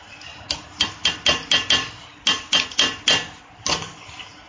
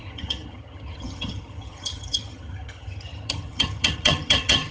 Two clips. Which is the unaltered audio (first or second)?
first